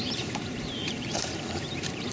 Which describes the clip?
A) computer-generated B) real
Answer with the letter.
A